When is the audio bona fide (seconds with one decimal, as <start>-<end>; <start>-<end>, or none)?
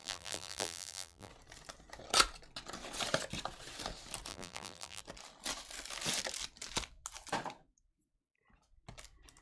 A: 1.3-4.3; 5.0-9.4